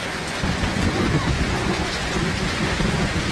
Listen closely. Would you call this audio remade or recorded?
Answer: remade